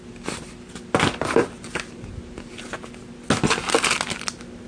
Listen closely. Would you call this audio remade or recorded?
recorded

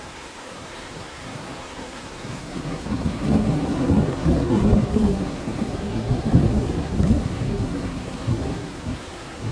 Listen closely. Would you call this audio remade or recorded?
remade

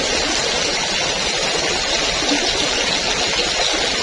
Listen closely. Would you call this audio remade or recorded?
recorded